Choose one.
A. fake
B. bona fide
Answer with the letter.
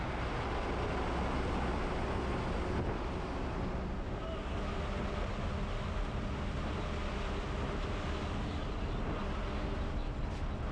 B